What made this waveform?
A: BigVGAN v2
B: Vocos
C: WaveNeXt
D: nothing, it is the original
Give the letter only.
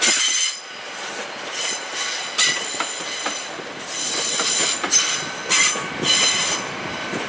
D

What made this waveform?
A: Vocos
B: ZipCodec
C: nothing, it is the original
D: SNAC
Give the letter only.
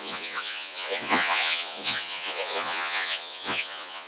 A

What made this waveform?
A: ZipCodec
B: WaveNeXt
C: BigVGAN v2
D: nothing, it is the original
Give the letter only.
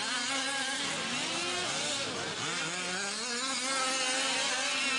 D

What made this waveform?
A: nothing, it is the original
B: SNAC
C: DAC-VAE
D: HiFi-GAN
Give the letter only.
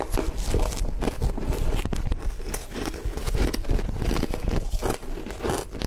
A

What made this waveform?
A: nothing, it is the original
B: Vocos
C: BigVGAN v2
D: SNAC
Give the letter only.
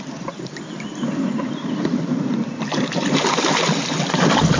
C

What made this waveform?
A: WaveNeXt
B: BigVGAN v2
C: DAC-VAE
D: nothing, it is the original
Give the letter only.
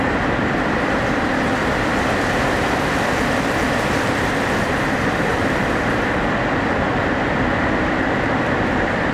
B